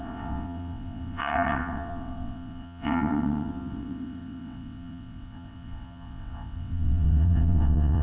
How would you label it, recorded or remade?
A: remade